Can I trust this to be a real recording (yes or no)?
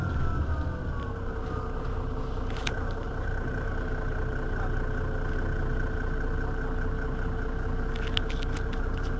yes